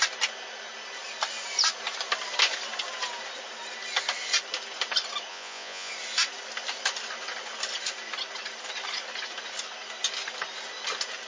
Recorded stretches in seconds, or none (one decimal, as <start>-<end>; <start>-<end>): 0.0-5.3; 5.9-11.3